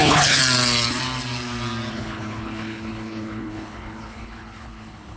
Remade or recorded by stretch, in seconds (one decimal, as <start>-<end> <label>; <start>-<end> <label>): 0.0-0.4 remade; 0.4-1.9 recorded; 1.9-5.2 remade